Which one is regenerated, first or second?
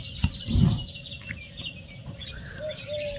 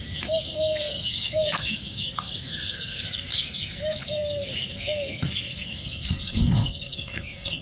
second